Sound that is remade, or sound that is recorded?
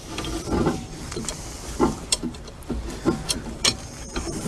remade